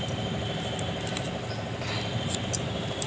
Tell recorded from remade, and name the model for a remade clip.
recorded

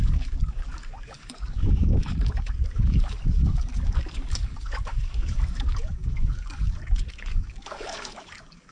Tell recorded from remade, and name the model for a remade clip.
remade, codec, DAC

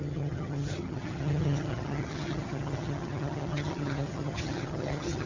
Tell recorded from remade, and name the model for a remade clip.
remade, vocoder, HiFi-GAN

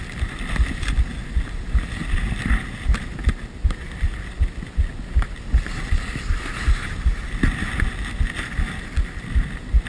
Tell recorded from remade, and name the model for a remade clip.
recorded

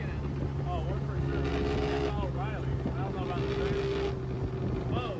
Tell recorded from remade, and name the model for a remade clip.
recorded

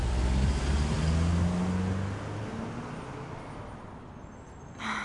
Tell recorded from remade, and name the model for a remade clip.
recorded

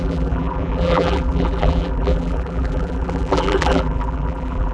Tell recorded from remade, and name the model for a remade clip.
remade, vocoder, BigVGAN v2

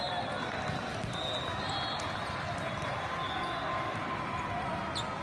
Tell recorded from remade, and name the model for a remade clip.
recorded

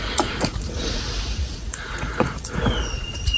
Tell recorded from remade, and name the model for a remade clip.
remade, vocoder, Vocos